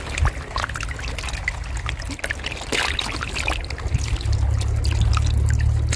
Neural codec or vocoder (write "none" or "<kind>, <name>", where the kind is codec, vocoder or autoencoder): none